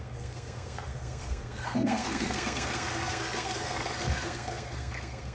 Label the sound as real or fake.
fake